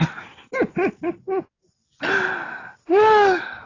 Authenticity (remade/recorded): recorded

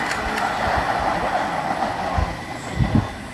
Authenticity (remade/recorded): recorded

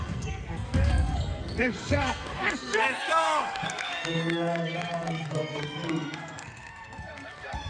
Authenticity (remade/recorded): remade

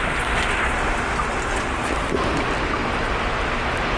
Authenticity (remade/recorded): recorded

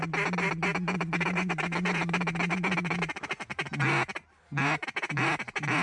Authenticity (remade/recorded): recorded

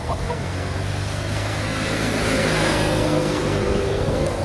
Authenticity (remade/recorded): remade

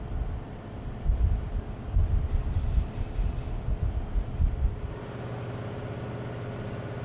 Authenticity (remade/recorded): recorded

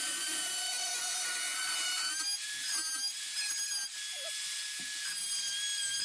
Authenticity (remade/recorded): recorded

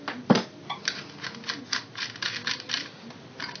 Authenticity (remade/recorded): recorded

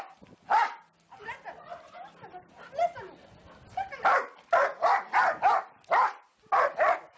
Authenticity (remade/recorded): recorded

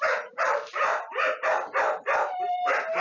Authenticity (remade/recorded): recorded